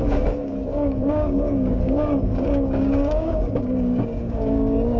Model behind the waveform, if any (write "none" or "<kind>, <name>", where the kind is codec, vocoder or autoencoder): codec, DAC